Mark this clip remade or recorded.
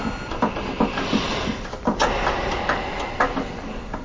recorded